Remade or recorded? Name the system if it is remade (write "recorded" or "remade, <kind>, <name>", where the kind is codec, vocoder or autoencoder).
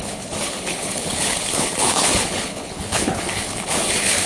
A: remade, codec, HILCodec